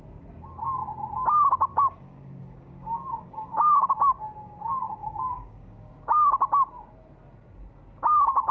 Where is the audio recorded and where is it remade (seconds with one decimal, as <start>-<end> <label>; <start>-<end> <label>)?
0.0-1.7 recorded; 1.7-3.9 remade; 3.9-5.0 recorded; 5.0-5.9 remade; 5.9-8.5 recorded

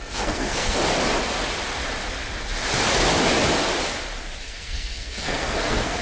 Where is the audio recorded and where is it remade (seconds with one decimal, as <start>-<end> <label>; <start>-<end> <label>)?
0.0-0.8 remade; 0.8-4.4 recorded; 4.4-6.0 remade

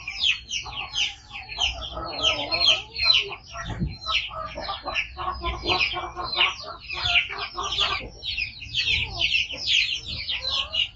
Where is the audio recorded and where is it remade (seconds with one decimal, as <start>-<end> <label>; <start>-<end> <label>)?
0.0-11.0 recorded

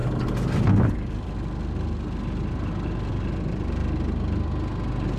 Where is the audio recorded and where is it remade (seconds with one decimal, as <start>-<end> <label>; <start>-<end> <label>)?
0.0-5.2 recorded